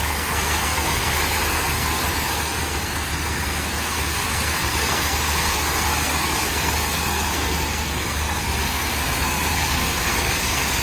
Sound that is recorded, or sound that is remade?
remade